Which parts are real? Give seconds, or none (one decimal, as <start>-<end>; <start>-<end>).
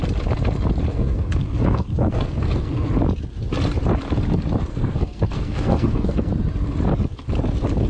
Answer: 0.0-0.9; 2.9-4.7; 6.3-7.9